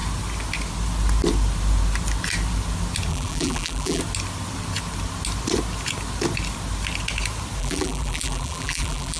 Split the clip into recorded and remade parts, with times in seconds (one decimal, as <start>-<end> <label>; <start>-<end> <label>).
0.0-3.1 recorded; 3.1-4.0 remade; 4.0-7.6 recorded; 7.6-9.2 remade